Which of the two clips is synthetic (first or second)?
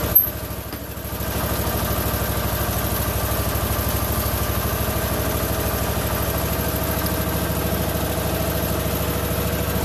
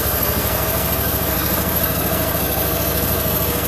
second